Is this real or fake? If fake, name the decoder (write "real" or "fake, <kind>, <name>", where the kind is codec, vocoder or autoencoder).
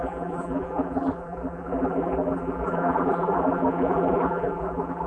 fake, vocoder, BigVGAN v2